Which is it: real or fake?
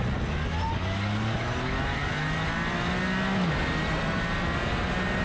real